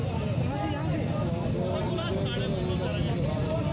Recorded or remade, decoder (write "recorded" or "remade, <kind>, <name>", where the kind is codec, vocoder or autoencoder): recorded